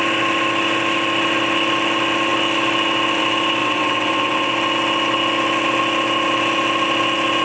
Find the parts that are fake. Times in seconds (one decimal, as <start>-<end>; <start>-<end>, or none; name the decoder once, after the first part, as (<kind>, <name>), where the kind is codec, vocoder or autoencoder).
3.6-4.5 (vocoder, WaveNeXt)